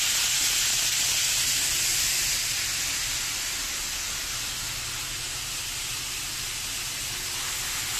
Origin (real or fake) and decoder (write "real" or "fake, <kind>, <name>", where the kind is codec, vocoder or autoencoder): real